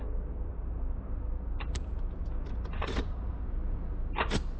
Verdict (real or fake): real